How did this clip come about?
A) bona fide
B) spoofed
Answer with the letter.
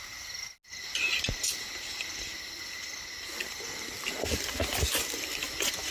A